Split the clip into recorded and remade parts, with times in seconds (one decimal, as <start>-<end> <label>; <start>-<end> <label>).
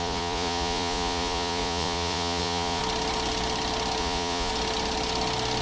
0.0-2.8 remade; 2.8-4.0 recorded; 4.0-4.5 remade; 4.5-5.6 recorded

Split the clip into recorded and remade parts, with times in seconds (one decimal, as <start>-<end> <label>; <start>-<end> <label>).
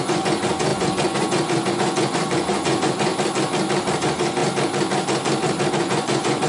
0.0-3.1 remade; 3.1-4.0 recorded; 4.0-4.4 remade; 4.4-5.7 recorded; 5.7-6.5 remade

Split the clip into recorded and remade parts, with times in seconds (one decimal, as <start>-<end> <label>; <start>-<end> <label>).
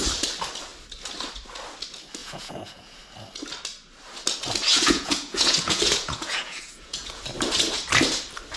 0.0-2.2 recorded; 2.2-3.0 remade; 3.0-4.7 recorded; 4.7-7.2 remade; 7.2-8.6 recorded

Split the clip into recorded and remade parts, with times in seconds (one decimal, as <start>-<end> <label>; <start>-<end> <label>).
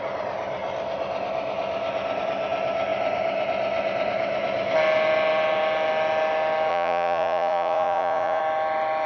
0.0-6.7 recorded; 6.7-8.4 remade; 8.4-9.1 recorded